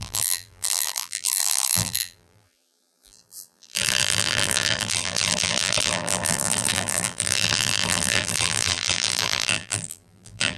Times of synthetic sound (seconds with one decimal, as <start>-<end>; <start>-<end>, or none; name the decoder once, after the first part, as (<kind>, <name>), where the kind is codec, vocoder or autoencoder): 0.0-10.6 (vocoder, BigVGAN v2)

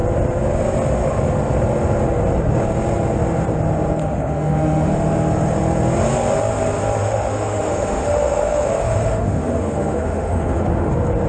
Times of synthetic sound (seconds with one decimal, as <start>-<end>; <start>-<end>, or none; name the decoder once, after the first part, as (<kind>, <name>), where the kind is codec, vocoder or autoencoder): 4.0-4.9 (autoencoder, DAC-VAE); 7.0-10.9

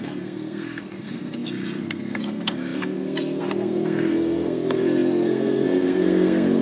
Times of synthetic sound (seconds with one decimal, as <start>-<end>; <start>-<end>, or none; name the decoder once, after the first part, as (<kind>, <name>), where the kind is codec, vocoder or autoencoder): 0.0-6.6 (codec, SNAC)